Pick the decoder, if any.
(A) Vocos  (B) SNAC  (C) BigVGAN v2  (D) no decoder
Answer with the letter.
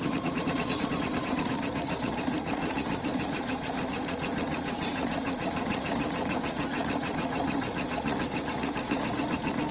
A